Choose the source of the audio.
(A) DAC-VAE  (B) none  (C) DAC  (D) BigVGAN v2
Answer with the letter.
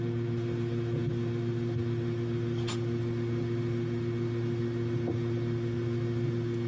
B